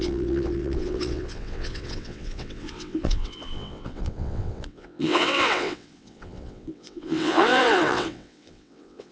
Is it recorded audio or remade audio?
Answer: remade